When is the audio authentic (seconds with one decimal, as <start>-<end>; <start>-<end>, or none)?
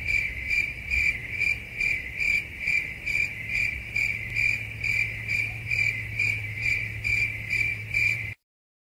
1.2-5.3; 6.8-7.5